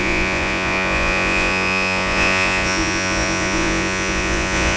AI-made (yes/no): yes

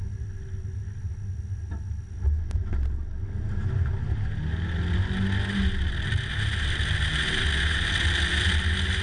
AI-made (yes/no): no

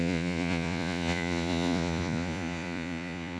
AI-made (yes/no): yes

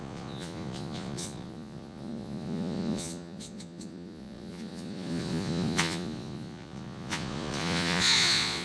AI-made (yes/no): yes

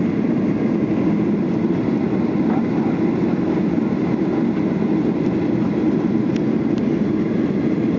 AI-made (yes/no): no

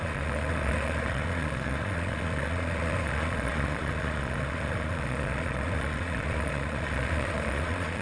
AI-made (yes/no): yes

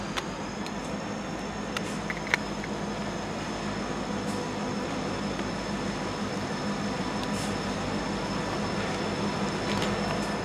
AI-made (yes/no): no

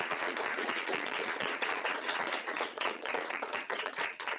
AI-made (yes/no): yes